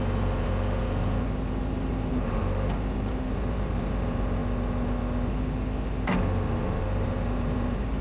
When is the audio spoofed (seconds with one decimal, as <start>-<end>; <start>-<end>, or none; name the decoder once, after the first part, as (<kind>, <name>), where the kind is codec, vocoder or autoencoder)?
0.0-4.4 (vocoder, BigVGAN v2); 6.8-8.0